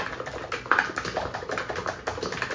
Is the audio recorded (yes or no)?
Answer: yes